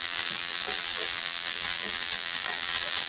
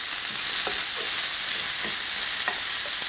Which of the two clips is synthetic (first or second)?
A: first